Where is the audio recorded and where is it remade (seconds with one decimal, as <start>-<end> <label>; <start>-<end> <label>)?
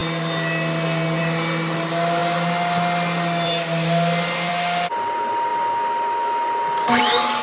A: 0.0-7.4 recorded